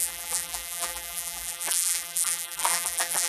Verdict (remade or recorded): remade